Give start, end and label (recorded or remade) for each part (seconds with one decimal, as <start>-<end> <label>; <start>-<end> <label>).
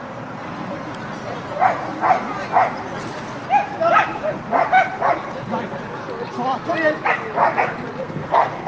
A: 0.0-8.0 recorded; 8.0-8.7 remade